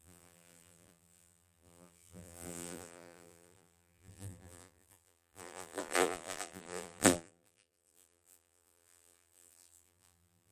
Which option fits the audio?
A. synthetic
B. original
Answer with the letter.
A